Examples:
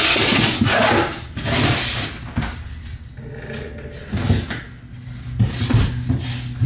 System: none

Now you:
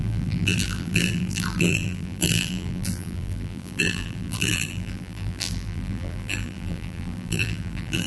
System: vocoder, BigVGAN v2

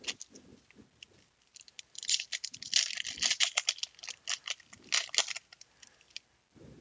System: none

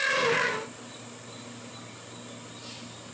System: none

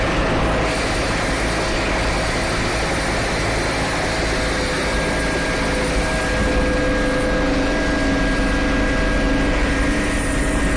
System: none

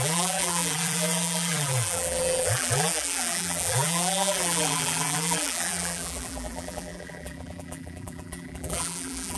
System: vocoder, BigVGAN v2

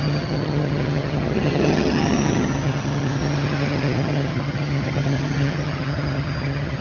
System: vocoder, HiFi-GAN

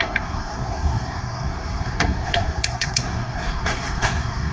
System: codec, SNAC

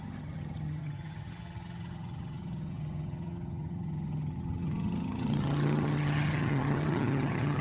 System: vocoder, HiFi-GAN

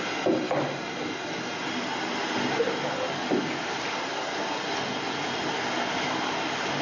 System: none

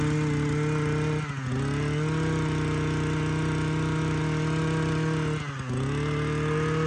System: none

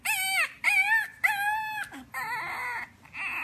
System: none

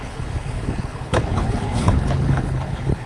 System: codec, HILCodec